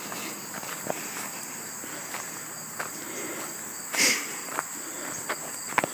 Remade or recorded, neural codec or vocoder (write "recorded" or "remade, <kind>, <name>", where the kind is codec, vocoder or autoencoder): recorded